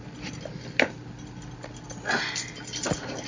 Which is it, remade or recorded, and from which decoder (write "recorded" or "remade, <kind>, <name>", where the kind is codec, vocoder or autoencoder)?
recorded